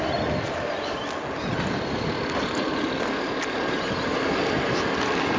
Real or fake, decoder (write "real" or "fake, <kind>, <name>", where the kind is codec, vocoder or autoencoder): real